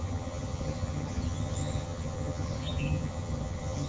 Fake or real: fake